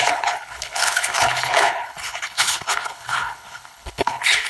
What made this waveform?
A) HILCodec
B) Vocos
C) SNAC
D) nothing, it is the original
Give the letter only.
A